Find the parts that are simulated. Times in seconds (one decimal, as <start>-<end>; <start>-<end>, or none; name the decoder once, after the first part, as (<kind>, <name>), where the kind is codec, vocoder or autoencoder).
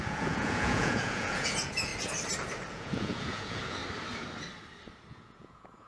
0.0-1.9 (vocoder, Vocos); 2.7-3.8; 5.1-5.9